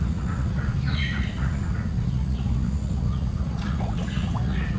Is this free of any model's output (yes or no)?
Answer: no